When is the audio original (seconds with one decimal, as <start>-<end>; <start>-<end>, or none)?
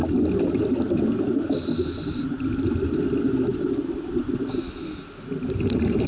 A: 0.0-6.1